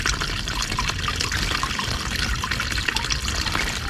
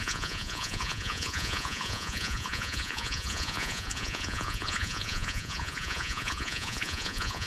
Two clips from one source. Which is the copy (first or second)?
second